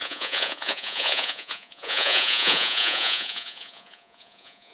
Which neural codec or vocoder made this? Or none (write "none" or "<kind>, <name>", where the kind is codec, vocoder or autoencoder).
vocoder, Vocos